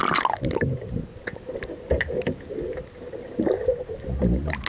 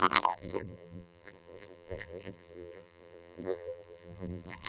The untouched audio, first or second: first